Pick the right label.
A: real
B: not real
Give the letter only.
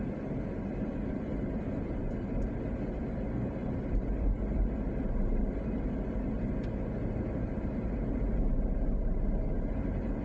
A